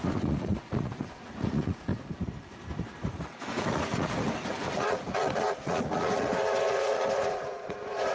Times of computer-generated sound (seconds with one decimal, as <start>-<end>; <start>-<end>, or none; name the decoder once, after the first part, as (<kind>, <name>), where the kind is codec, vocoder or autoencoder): 0.0-1.9 (vocoder, Vocos); 3.6-8.1